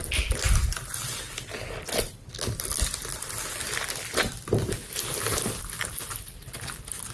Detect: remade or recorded recorded